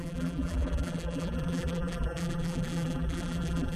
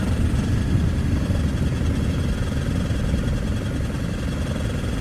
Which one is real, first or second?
second